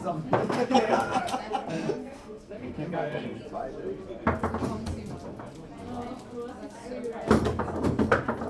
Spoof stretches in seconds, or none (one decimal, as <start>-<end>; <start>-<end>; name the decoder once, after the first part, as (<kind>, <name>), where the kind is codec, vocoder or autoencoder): 0.4-1.2 (codec, SNAC); 2.0-3.4